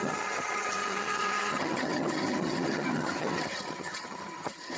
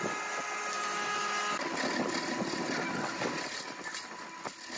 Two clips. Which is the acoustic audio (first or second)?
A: second